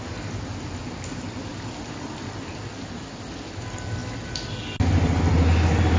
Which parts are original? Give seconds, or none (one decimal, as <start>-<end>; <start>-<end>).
0.0-6.0